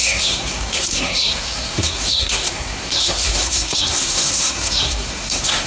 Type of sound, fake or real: fake